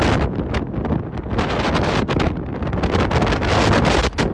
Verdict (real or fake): real